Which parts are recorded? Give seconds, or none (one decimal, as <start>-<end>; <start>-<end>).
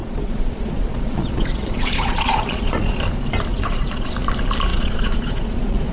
3.0-3.5; 4.1-4.7